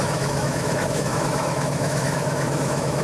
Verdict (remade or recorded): remade